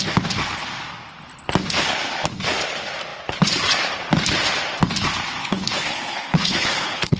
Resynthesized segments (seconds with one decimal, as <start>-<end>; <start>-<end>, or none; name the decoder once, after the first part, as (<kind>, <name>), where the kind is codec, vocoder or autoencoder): 5.4-7.2 (codec, HILCodec)